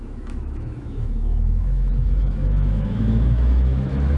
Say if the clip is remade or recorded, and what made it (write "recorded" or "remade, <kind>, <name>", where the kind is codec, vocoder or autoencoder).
remade, autoencoder, DAC-VAE